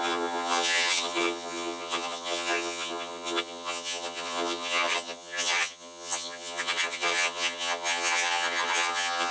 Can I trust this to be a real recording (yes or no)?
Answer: no